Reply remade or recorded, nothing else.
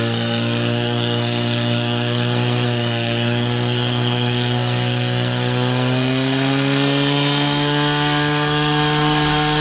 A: remade